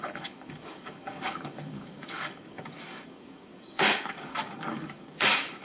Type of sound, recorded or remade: remade